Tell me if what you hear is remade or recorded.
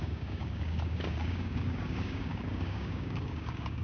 remade